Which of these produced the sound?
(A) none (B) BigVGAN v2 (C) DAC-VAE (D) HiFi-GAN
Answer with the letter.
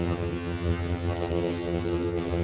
D